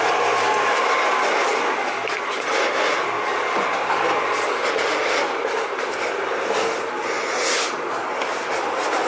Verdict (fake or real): real